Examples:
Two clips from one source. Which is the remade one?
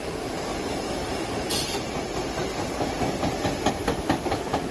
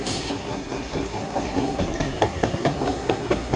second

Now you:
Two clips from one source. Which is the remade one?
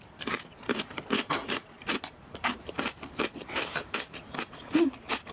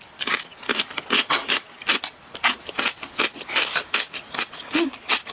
first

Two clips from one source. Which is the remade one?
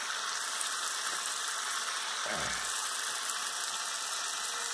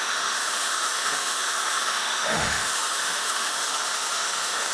second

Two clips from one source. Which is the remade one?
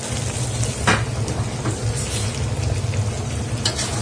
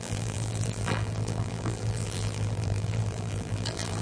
second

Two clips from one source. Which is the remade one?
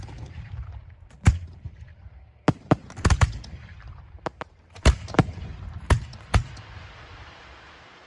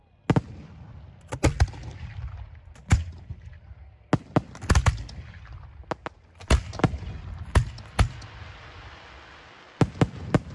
first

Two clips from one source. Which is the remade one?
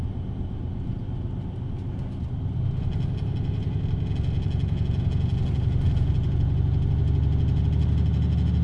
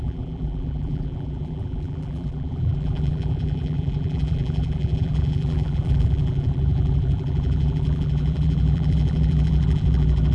second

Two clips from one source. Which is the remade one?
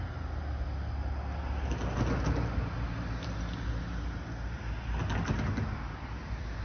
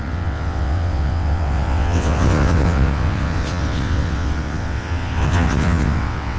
second